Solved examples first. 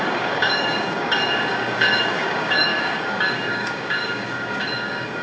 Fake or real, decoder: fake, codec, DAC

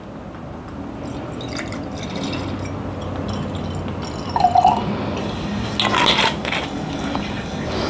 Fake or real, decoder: real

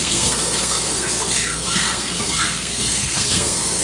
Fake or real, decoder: fake, codec, SNAC